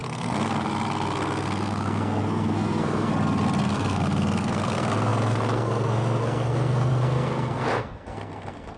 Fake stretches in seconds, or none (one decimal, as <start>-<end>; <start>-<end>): 0.0-3.1; 3.6-8.8